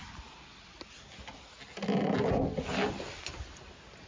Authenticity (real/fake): real